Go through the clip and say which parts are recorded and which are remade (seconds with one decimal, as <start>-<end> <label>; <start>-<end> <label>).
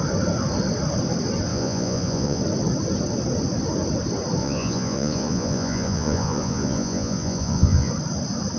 0.0-1.5 recorded; 1.5-2.4 remade; 2.4-4.4 recorded; 4.4-7.9 remade; 7.9-8.6 recorded